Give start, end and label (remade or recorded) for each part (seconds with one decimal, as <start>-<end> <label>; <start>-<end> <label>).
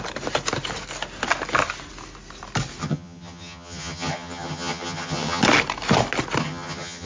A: 0.0-2.8 recorded; 2.8-5.4 remade; 5.4-6.4 recorded; 6.4-7.1 remade